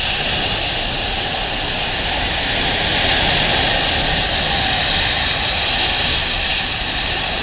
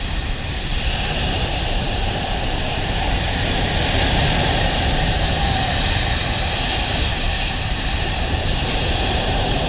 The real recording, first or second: first